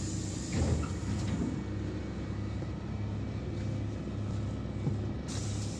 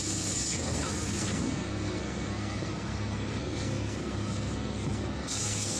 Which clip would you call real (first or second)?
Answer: first